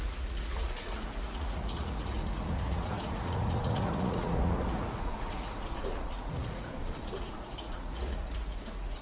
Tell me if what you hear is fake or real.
fake